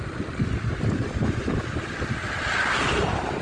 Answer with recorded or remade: recorded